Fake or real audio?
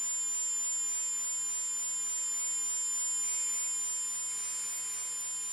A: real